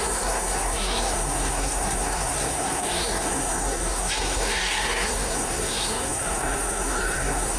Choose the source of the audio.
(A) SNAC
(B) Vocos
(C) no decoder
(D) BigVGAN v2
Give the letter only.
A